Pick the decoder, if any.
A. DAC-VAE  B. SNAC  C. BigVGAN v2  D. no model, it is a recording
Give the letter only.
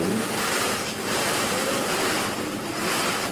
D